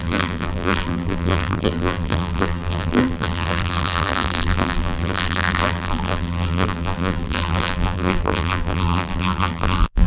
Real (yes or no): no